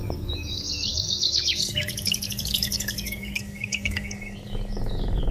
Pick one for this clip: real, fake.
fake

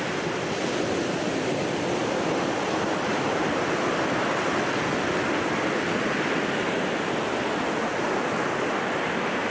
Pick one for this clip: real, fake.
real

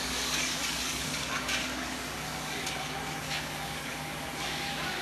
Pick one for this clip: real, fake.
fake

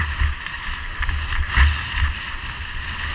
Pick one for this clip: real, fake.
real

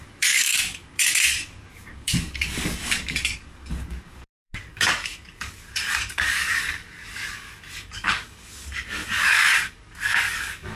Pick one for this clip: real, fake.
fake